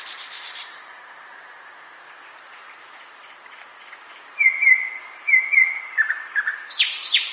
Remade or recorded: remade